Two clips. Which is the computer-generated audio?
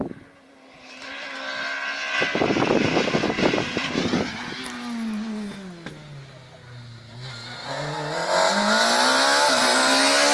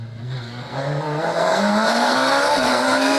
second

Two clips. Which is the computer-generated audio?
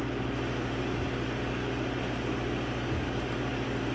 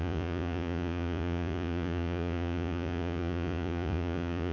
second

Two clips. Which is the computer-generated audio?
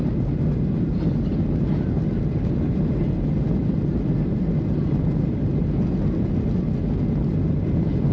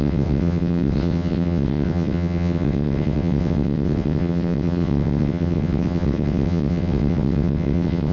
second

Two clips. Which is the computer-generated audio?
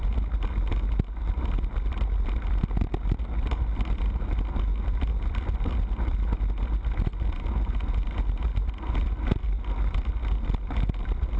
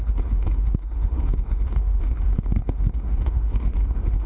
second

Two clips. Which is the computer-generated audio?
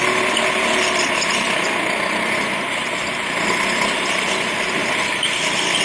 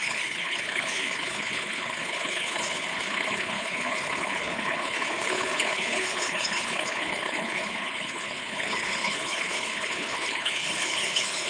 second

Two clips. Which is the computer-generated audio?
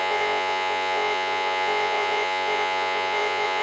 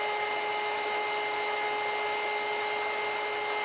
first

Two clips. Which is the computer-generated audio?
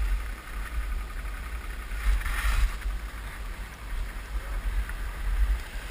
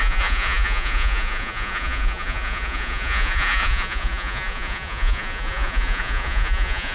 second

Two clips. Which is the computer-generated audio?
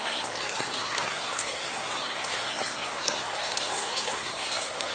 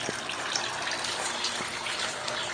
first